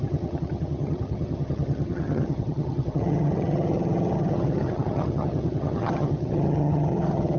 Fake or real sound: fake